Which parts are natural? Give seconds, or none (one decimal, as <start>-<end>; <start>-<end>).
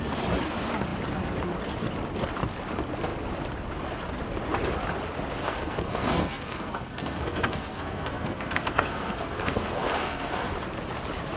0.0-5.4; 10.5-11.4